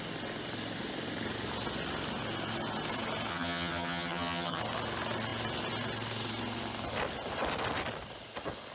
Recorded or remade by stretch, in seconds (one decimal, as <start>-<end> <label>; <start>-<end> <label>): 0.0-3.3 recorded; 3.3-4.6 remade; 4.6-8.7 recorded